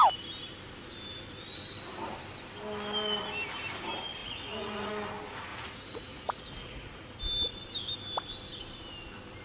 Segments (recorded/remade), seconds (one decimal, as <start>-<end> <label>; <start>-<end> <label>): 0.0-4.2 recorded; 4.2-4.9 remade; 4.9-5.5 recorded; 5.5-7.2 remade; 7.2-9.4 recorded